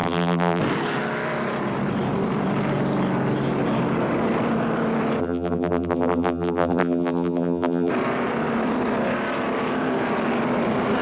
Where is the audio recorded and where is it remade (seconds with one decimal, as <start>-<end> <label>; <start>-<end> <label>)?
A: 0.0-0.6 remade; 0.6-5.2 recorded; 5.2-7.9 remade; 7.9-11.0 recorded